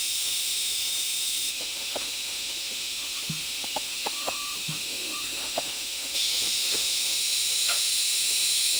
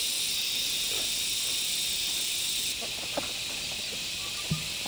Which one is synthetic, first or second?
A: first